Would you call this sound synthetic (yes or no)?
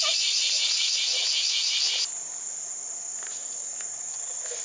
no